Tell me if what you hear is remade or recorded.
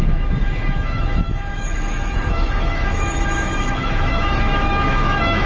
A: remade